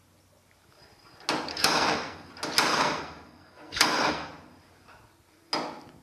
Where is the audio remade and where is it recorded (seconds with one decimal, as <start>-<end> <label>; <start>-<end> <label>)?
0.0-1.5 recorded; 1.5-2.3 remade; 2.3-2.7 recorded; 2.7-4.3 remade; 4.3-6.0 recorded